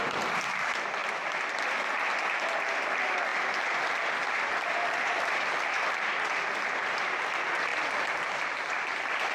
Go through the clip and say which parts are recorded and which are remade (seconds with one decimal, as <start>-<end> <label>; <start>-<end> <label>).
0.0-9.3 recorded